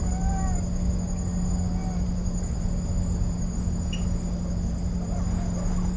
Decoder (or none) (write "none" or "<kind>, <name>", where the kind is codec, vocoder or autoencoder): none